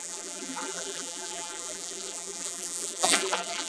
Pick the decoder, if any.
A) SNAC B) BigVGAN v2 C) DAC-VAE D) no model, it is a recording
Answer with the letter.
B